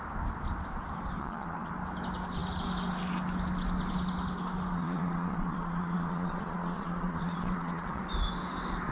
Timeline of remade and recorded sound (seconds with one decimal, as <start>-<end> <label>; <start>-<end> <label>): 0.0-1.2 recorded; 1.2-1.7 remade; 1.7-4.7 recorded; 4.7-8.0 remade; 8.0-8.9 recorded

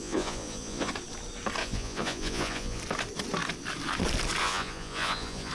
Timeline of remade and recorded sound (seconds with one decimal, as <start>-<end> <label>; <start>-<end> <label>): 0.0-0.9 remade; 0.9-1.6 recorded; 1.6-2.8 remade; 2.8-4.4 recorded; 4.4-5.5 remade

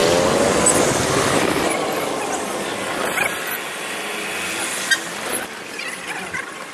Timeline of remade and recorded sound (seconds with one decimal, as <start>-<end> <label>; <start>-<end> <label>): 0.0-6.7 recorded

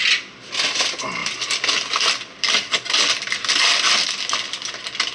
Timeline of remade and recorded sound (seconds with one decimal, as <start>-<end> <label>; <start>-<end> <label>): 0.0-5.1 recorded

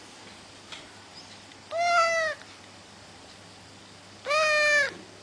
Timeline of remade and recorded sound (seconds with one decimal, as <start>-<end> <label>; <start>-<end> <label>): 0.0-5.2 recorded

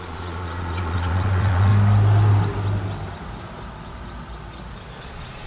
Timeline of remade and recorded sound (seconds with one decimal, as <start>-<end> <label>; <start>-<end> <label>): 0.0-1.7 remade; 1.7-5.0 recorded; 5.0-5.5 remade

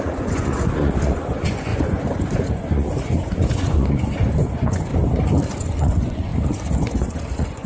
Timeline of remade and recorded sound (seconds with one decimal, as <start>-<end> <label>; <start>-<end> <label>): 0.0-4.9 remade; 4.9-5.6 recorded; 5.6-6.3 remade; 6.3-6.8 recorded; 6.8-7.7 remade